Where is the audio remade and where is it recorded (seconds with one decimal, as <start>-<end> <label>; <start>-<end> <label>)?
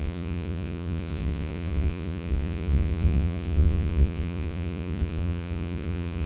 0.0-6.3 remade